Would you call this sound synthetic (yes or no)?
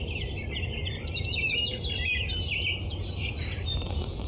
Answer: no